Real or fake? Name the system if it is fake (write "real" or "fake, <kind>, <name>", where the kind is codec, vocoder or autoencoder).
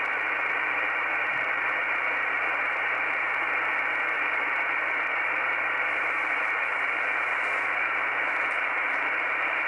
fake, vocoder, BigVGAN v2